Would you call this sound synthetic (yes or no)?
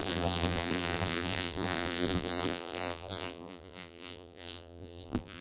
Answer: yes